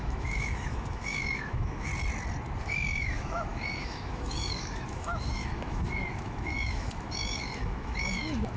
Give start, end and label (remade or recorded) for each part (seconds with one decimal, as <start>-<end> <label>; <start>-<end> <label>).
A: 0.0-1.9 remade; 1.9-2.6 recorded; 2.6-8.6 remade